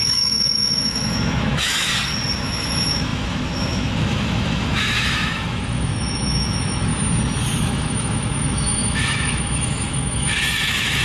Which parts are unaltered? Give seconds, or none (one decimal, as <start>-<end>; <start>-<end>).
1.9-2.4; 6.9-7.6